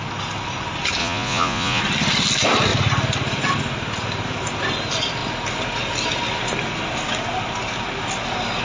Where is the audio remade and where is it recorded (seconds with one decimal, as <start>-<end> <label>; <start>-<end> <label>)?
0.0-1.0 recorded; 1.0-1.8 remade; 1.8-8.6 recorded